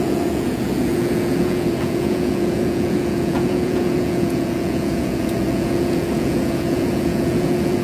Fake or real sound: fake